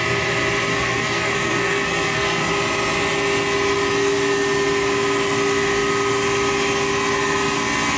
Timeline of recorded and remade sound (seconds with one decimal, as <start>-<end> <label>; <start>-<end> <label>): 0.0-0.7 recorded; 0.7-2.5 remade; 2.5-8.0 recorded